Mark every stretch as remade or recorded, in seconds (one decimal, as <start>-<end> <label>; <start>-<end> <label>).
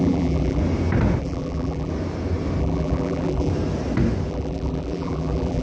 0.0-0.6 remade; 0.6-1.2 recorded; 1.2-1.9 remade; 1.9-2.6 recorded; 2.6-3.5 remade; 3.5-4.3 recorded; 4.3-5.6 remade